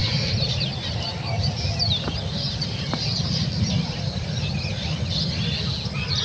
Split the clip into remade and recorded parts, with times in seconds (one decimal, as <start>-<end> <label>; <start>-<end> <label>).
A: 0.0-0.5 remade; 0.5-1.1 recorded; 1.1-4.5 remade; 4.5-6.2 recorded